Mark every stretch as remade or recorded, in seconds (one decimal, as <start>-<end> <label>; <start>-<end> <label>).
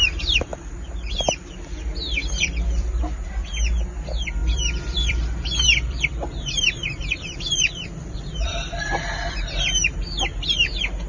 0.0-2.2 recorded; 2.2-3.0 remade; 3.0-4.4 recorded; 4.4-9.3 remade; 9.3-11.1 recorded